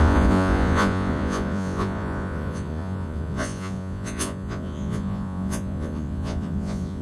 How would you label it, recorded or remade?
remade